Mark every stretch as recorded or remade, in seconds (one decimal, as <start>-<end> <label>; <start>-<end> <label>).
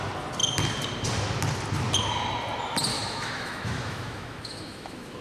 0.0-2.9 recorded; 2.9-5.2 remade